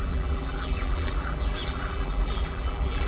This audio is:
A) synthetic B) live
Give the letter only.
A